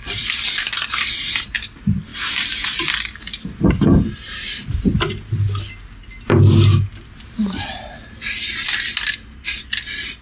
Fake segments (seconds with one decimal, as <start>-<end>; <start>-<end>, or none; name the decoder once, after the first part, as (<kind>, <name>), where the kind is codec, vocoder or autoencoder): none